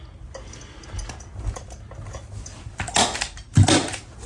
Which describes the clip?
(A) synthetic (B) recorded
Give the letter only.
B